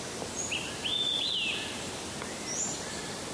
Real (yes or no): yes